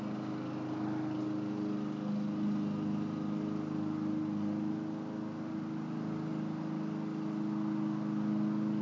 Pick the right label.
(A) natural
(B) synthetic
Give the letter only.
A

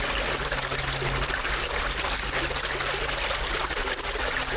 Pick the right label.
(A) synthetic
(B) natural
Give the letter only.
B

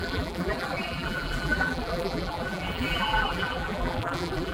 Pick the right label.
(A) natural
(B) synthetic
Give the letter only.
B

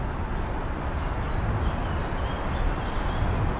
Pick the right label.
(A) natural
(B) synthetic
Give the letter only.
A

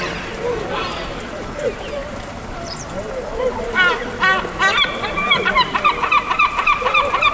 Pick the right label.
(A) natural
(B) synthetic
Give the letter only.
B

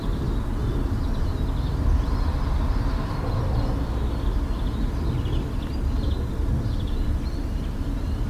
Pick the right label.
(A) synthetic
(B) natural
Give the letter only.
B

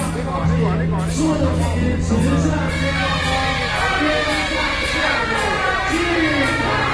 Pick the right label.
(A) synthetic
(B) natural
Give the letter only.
B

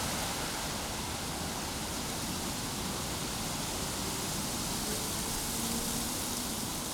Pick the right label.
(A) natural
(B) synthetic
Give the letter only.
A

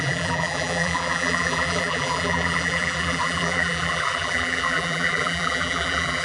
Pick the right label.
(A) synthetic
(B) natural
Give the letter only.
A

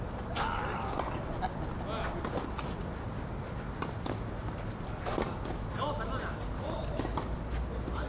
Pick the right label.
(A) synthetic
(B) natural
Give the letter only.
B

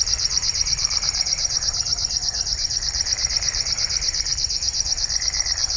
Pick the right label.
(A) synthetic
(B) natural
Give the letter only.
A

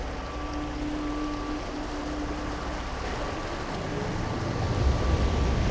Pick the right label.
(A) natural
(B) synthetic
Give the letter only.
A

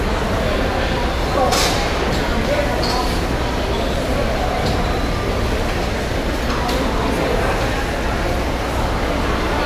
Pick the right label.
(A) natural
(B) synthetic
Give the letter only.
A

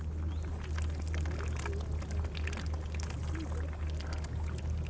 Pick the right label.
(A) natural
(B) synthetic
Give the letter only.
A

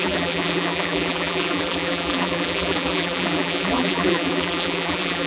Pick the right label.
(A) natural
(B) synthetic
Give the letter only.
B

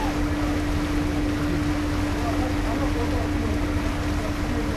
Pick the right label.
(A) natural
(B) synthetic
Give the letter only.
A